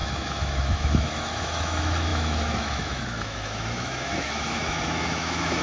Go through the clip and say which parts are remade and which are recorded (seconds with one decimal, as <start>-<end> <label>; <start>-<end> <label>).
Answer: 0.0-5.6 remade